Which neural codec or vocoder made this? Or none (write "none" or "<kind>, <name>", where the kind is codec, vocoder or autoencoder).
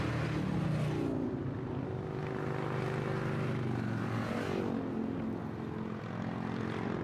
none